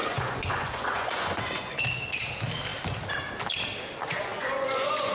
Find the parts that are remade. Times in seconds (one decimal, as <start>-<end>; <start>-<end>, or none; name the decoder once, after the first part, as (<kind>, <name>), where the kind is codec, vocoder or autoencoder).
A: 0.0-1.8 (vocoder, Vocos); 4.0-5.1